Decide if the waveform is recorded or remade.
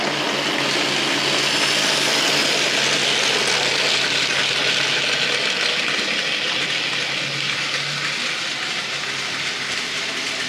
recorded